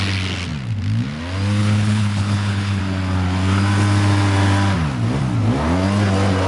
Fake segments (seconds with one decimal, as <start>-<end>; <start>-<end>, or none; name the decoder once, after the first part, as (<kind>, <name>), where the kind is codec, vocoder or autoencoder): 1.6-2.8 (codec, HILCodec)